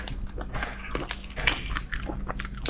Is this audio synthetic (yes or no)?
no